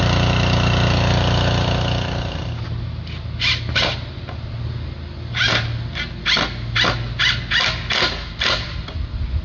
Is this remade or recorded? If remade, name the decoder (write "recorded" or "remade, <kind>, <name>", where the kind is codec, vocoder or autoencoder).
recorded